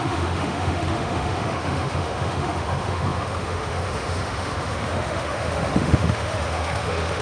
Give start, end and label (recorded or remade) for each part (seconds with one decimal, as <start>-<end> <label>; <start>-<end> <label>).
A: 0.0-7.2 remade